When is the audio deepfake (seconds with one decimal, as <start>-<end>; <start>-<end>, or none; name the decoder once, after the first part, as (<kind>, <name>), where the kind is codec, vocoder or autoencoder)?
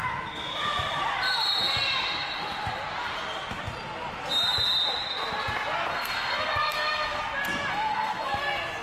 5.9-7.2 (codec, SNAC); 7.7-8.4